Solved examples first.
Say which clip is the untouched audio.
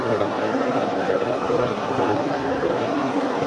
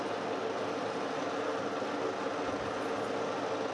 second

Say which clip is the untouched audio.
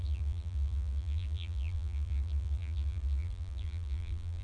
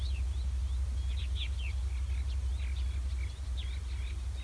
second